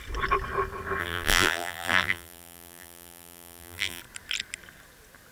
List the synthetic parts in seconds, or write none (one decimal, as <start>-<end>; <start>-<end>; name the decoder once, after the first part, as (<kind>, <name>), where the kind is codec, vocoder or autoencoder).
1.0-4.0 (vocoder, BigVGAN v2)

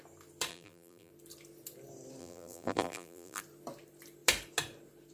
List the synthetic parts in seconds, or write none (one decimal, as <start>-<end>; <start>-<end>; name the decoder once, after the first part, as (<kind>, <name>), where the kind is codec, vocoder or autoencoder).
0.5-1.1 (vocoder, BigVGAN v2); 2.2-3.4

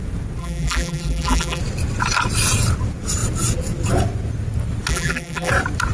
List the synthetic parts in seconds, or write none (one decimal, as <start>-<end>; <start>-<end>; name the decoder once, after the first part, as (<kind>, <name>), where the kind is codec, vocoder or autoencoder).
0.4-1.6 (vocoder, BigVGAN v2); 4.9-5.5

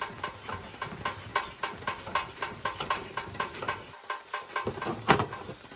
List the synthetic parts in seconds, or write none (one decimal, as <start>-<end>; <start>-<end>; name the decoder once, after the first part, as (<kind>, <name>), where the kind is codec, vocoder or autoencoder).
1.3-3.9 (vocoder, BigVGAN v2)

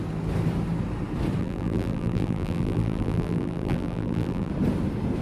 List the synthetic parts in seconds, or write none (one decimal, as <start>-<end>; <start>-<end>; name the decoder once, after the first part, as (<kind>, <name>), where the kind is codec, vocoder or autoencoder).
1.4-4.5 (vocoder, BigVGAN v2)

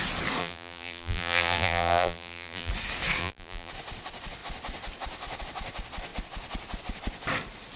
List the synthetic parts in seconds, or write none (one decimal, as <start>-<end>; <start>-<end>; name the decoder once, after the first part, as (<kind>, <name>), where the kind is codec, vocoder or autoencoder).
0.4-2.7 (vocoder, BigVGAN v2); 3.2-3.7

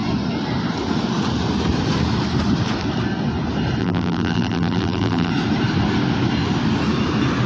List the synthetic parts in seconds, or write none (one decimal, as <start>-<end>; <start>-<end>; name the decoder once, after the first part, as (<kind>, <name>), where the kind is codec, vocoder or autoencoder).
3.8-5.3 (vocoder, BigVGAN v2)